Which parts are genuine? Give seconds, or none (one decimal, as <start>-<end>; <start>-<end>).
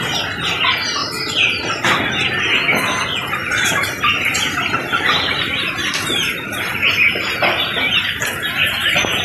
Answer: 0.0-3.4; 6.6-9.2